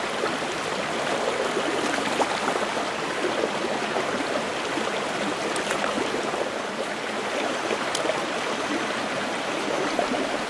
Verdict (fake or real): real